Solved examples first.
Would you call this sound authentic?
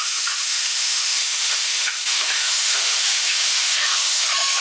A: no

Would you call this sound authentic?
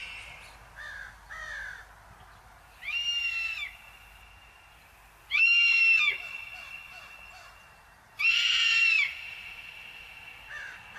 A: yes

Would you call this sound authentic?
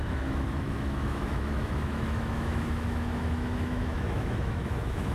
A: no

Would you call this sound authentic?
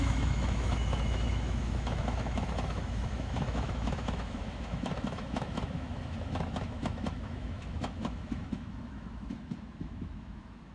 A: no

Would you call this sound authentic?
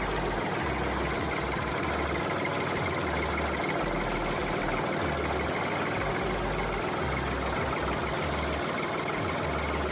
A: yes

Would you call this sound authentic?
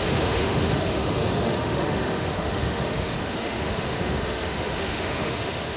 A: no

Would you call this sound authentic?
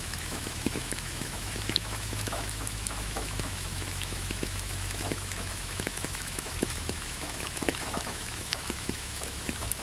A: no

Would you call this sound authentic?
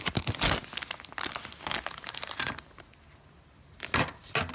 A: yes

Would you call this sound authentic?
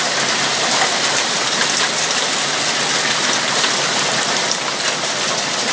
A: yes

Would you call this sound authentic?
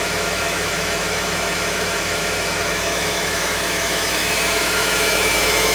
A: no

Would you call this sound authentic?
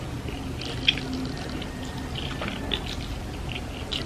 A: yes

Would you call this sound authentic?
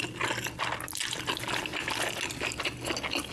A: yes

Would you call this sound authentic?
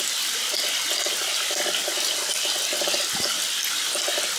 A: yes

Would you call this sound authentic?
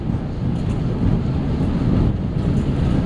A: yes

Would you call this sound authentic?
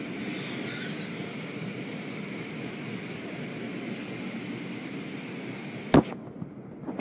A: yes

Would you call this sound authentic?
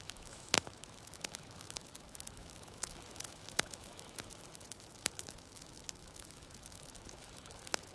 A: no